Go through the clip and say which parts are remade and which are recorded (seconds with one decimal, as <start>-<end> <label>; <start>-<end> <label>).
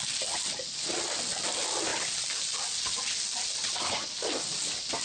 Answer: 0.0-5.0 recorded